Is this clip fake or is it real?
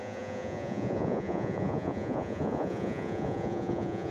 fake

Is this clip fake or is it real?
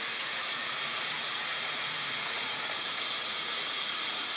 fake